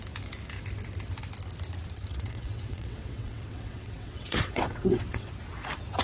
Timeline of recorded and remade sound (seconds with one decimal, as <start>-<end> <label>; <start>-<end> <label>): 0.0-2.1 recorded; 2.1-5.3 remade; 5.3-6.0 recorded